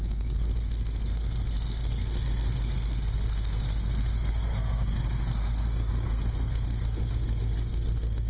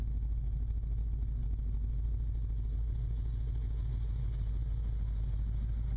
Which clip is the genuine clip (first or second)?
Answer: second